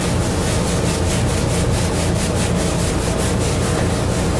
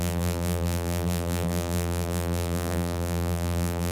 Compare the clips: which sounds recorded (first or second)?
first